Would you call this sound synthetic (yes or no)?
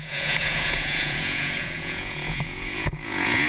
yes